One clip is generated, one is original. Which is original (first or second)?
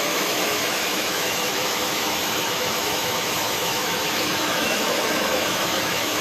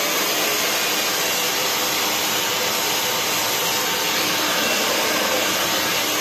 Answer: second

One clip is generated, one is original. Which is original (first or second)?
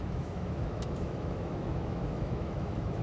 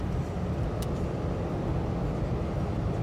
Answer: second